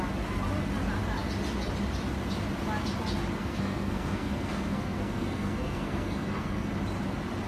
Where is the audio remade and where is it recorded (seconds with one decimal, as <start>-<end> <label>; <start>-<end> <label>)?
0.0-3.4 recorded; 3.4-6.7 remade; 6.7-7.5 recorded